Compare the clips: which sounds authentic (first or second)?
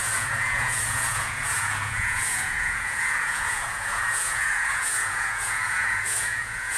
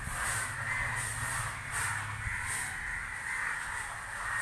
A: second